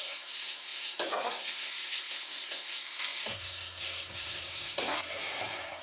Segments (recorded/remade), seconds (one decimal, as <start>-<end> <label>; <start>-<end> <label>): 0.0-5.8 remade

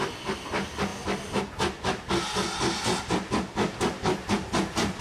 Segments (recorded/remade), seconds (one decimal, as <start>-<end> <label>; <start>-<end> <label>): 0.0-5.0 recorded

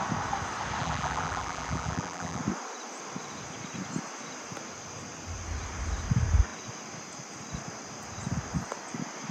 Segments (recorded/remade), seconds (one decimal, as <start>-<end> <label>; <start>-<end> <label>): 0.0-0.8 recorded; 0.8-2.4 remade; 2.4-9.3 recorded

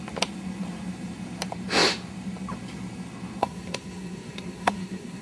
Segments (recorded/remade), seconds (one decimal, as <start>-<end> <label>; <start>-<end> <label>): 0.0-3.4 recorded; 3.4-5.2 remade

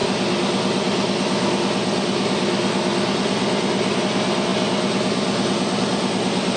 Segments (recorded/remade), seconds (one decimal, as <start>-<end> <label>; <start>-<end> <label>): 0.0-6.6 recorded

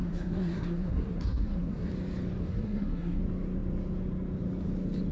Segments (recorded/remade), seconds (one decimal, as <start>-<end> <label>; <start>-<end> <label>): 0.0-1.9 remade; 1.9-2.4 recorded; 2.4-3.2 remade; 3.2-5.1 recorded